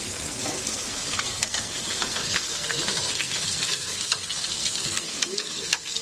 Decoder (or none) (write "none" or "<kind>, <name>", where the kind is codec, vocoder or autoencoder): codec, SNAC